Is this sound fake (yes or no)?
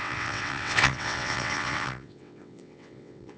yes